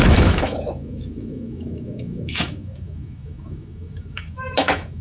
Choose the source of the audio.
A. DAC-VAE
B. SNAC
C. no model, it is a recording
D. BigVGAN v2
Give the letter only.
A